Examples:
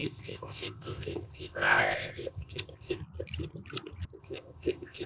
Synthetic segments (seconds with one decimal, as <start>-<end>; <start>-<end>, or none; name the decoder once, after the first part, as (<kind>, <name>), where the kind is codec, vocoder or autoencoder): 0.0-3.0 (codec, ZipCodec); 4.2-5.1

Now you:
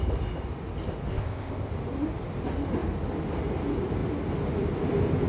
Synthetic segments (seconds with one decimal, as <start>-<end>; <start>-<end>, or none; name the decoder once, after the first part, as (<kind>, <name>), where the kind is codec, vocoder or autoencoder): 1.1-1.7 (codec, ZipCodec)

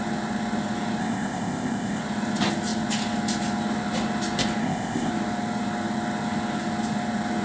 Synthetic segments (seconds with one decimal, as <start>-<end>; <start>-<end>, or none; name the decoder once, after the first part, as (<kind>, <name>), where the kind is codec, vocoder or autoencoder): 1.0-2.0 (codec, ZipCodec); 4.6-5.1